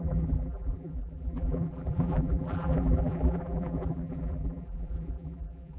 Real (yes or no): no